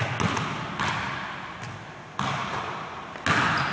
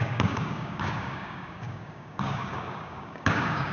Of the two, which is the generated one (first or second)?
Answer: second